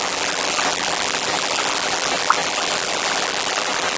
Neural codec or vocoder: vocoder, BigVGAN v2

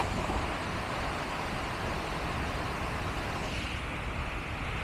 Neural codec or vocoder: none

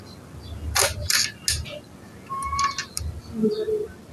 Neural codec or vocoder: none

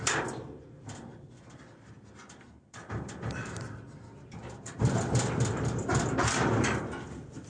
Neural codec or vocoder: vocoder, BigVGAN v2